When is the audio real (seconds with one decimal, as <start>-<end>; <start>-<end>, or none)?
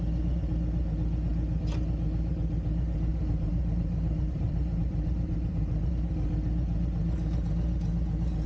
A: 0.0-3.1; 5.9-8.5